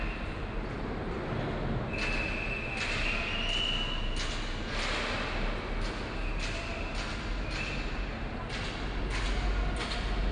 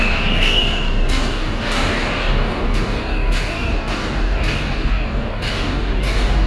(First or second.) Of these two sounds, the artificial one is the second